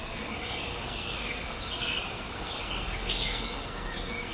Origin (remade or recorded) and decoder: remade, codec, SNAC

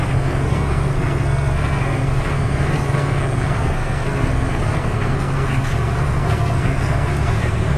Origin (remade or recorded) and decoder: remade, codec, SNAC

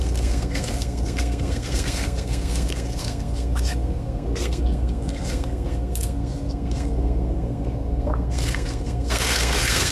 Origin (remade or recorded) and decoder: remade, codec, SNAC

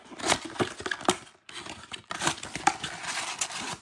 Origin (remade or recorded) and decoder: recorded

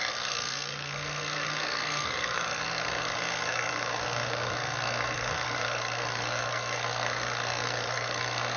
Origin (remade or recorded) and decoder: remade, codec, SNAC